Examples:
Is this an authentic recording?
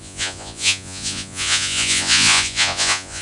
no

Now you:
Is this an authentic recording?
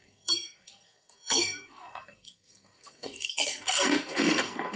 no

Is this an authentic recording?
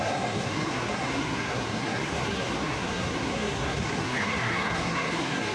no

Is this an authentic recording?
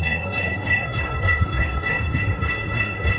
no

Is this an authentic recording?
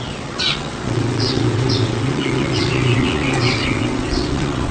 no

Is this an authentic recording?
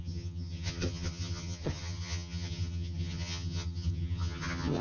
no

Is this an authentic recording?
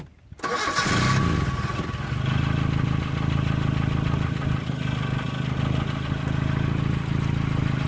yes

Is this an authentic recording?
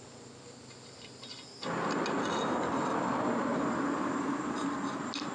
yes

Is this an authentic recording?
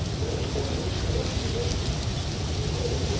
yes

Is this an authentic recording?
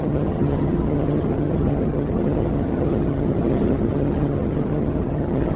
no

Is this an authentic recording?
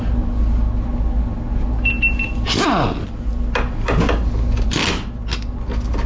yes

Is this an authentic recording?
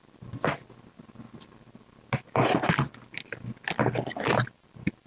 yes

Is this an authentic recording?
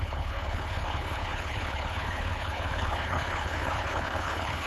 no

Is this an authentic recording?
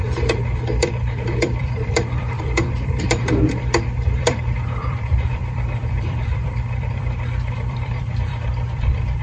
no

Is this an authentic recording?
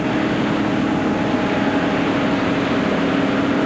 yes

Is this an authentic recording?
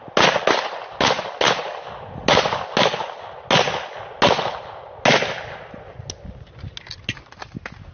yes